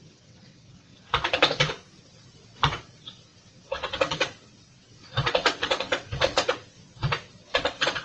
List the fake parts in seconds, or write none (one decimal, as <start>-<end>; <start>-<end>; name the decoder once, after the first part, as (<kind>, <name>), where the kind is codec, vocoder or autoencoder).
0.0-0.9 (vocoder, WaveNeXt); 2.0-8.0